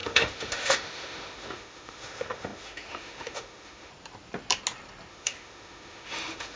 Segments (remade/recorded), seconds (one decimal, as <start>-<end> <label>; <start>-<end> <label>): 0.0-3.9 remade; 3.9-5.1 recorded; 5.1-6.6 remade